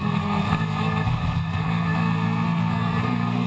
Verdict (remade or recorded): remade